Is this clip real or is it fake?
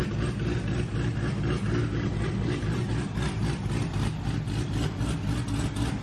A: real